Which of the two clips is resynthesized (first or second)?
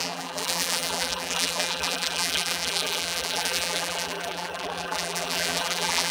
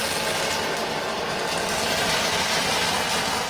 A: first